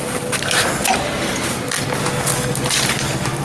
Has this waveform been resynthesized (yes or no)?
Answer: no